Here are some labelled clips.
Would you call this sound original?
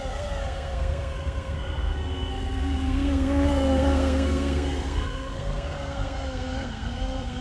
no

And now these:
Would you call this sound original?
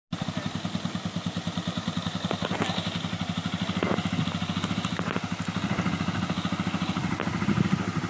yes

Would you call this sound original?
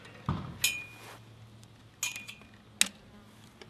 yes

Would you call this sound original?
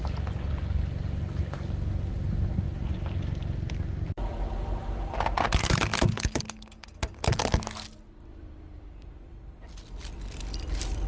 yes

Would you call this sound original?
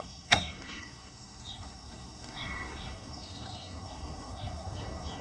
no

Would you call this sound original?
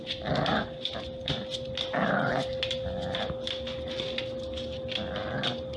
yes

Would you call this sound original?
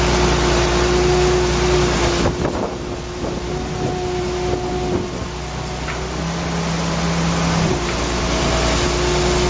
yes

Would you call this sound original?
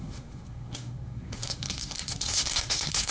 no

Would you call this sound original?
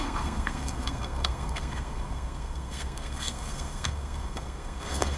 no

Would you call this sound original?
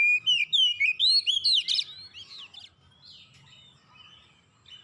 yes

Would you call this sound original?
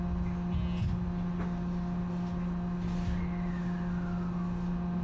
yes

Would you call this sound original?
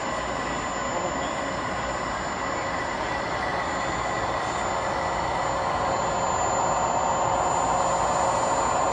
yes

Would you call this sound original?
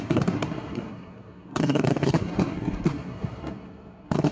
no